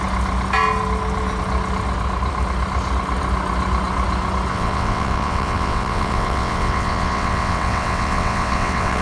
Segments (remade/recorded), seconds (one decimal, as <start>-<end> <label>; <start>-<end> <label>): 0.0-4.5 recorded; 4.5-9.0 remade